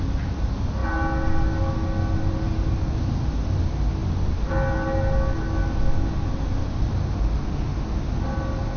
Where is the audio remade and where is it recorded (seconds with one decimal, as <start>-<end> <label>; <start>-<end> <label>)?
0.0-8.8 recorded